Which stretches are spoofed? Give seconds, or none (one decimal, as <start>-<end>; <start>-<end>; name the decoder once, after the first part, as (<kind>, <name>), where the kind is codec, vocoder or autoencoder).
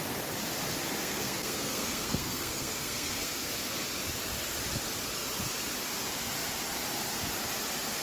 1.0-3.5 (codec, SNAC)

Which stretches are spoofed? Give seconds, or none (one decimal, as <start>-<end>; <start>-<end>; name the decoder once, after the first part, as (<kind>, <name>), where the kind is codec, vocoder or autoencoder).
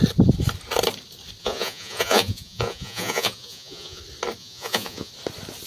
1.4-4.0 (vocoder, Vocos); 4.4-5.1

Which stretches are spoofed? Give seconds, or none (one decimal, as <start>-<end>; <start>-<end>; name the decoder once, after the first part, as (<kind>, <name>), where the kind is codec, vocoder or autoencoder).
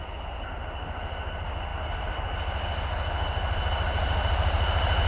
none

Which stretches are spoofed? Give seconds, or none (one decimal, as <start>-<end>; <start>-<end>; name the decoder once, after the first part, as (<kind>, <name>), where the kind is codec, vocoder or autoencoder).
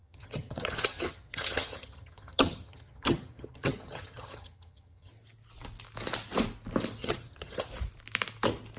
0.0-5.1 (vocoder, HiFi-GAN); 7.0-7.7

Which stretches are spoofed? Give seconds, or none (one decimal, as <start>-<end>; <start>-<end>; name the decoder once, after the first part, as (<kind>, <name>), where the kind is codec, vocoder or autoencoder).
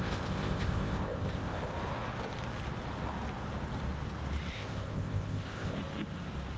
0.0-1.6 (codec, ZipCodec); 4.5-5.8